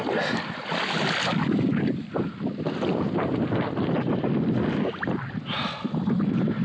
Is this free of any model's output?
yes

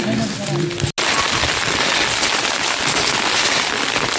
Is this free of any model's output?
yes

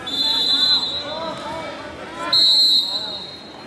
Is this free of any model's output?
yes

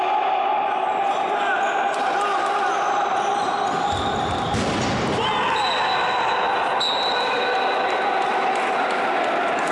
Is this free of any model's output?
yes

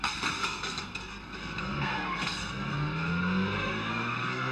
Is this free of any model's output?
no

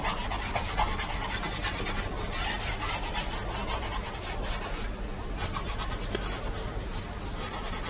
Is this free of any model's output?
yes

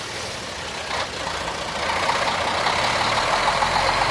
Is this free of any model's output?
yes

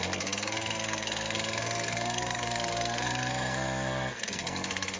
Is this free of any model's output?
no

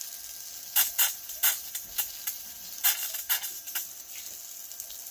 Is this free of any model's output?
yes